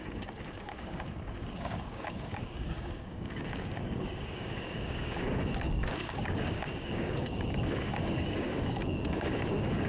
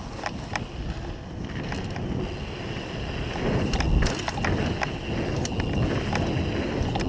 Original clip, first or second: second